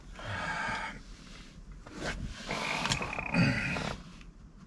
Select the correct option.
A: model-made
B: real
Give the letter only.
B